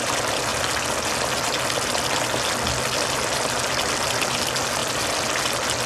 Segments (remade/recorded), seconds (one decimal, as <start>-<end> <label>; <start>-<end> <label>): 0.0-5.9 recorded